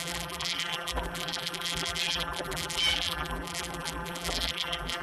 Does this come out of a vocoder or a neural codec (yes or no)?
yes